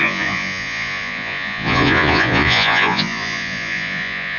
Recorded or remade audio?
remade